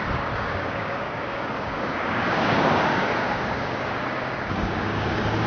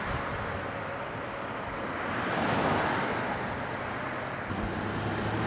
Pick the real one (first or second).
second